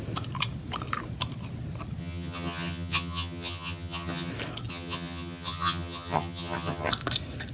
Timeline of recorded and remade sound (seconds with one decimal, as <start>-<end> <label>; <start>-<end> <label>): 0.0-2.0 recorded; 2.0-4.3 remade; 4.3-4.7 recorded; 4.7-6.9 remade; 6.9-7.5 recorded